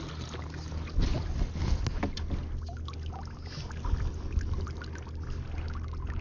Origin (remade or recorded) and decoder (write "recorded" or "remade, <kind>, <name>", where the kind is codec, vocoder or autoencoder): recorded